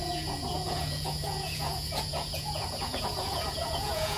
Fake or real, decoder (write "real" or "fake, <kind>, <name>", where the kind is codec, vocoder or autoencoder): fake, vocoder, Vocos